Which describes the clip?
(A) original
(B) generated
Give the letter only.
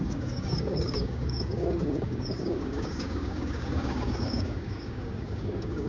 B